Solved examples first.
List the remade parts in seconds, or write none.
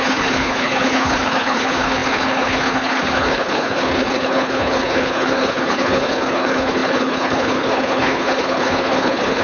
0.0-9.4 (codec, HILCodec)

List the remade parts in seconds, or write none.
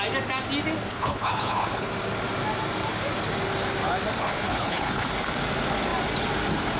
0.9-1.9 (codec, HILCodec); 4.2-5.1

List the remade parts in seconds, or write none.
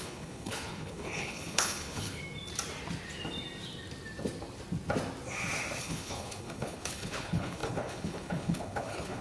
0.0-2.2 (codec, HILCodec); 5.8-9.2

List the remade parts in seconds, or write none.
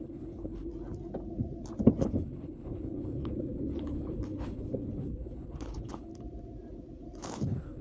0.0-0.7 (codec, HILCodec); 2.0-6.1; 7.2-7.8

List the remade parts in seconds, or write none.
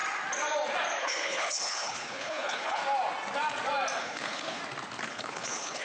1.0-2.8 (codec, HILCodec); 4.0-4.6; 5.1-5.8